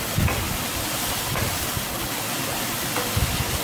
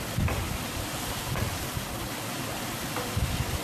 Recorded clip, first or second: first